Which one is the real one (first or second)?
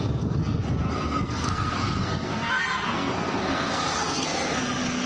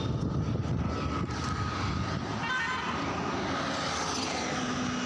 second